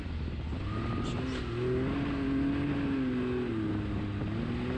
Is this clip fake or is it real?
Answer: real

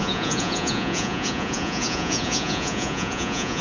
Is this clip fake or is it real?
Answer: fake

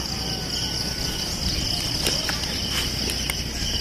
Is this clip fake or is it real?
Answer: real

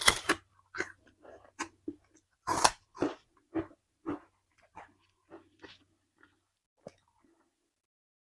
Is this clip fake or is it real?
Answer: real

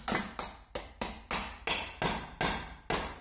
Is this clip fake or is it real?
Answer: real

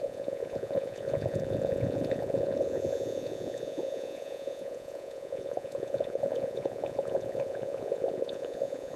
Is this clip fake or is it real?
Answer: fake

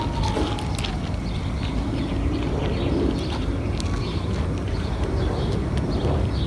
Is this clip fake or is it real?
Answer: real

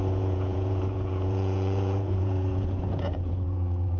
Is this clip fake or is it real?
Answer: fake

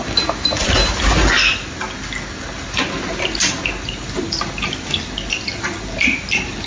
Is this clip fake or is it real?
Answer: real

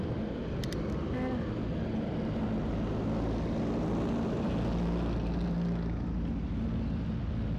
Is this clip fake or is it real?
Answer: real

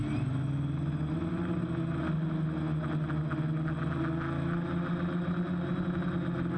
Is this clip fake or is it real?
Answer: real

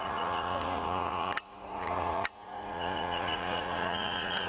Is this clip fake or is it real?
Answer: fake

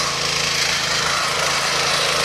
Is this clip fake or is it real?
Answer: real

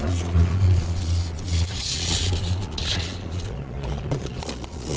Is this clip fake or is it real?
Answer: fake